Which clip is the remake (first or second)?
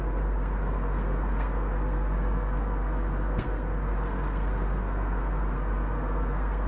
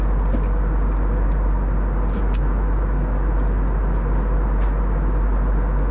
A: first